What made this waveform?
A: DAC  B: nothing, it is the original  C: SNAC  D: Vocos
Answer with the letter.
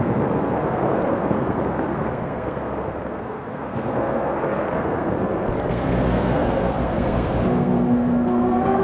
C